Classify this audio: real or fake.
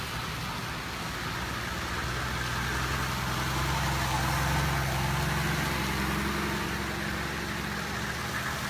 real